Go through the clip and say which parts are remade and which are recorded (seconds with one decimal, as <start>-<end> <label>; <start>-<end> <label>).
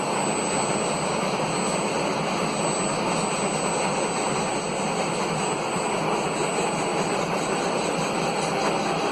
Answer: 0.0-6.9 recorded; 6.9-8.6 remade; 8.6-9.1 recorded